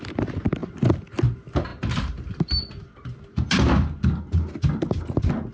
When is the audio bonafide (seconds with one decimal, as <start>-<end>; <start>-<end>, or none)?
0.0-5.5